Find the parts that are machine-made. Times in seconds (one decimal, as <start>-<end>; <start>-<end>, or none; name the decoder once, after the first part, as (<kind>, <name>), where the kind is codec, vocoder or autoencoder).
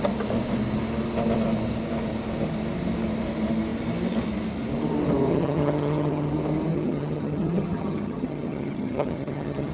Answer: 5.3-6.3 (vocoder, HiFi-GAN); 6.7-9.7